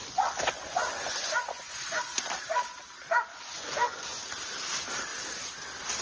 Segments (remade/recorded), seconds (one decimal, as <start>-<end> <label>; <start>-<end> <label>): 0.0-2.0 remade; 2.0-3.3 recorded; 3.3-4.2 remade; 4.2-6.0 recorded